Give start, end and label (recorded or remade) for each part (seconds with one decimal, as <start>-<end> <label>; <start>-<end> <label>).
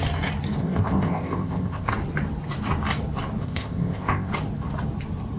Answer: 0.0-0.6 recorded; 0.6-1.9 remade; 1.9-3.4 recorded; 3.4-4.3 remade; 4.3-5.4 recorded